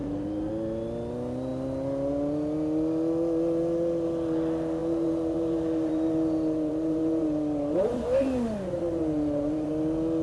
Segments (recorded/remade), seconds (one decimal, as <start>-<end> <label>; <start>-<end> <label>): 0.0-0.5 remade; 0.5-4.8 recorded; 4.8-9.7 remade; 9.7-10.2 recorded